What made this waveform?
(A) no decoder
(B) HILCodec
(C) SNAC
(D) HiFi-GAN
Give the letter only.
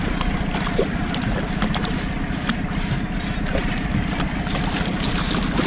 A